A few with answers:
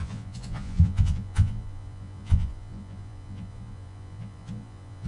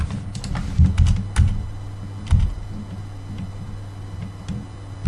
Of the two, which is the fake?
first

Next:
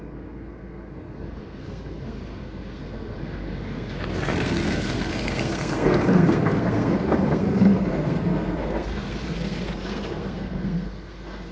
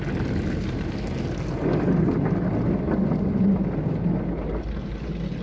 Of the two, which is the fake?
first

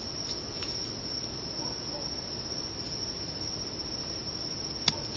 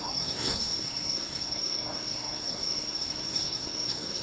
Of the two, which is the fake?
second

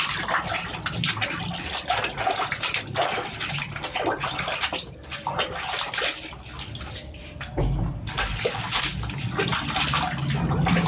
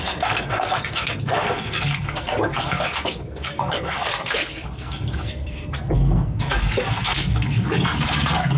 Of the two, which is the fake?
second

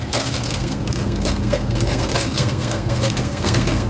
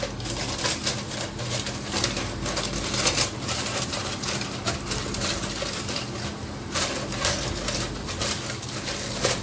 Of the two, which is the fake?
first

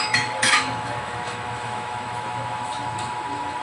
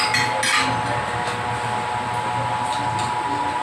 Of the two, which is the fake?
first